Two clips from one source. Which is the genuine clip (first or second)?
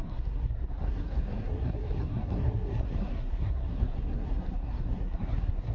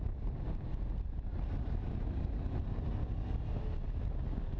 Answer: second